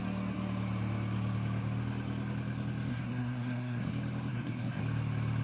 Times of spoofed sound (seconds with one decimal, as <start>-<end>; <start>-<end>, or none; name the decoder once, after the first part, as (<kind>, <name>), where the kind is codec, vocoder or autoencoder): 2.9-3.9 (codec, SNAC); 4.3-4.8